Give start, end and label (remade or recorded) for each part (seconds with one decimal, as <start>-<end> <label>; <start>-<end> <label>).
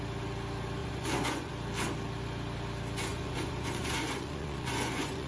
0.0-0.8 recorded; 0.8-1.5 remade; 1.5-3.1 recorded; 3.1-5.3 remade